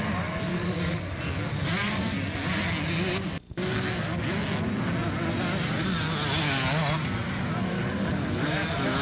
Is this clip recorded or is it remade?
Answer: recorded